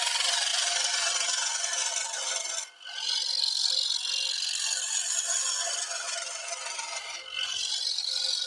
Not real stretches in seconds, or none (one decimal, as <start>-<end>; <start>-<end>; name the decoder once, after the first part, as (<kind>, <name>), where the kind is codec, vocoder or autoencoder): 0.5-1.9 (vocoder, BigVGAN v2)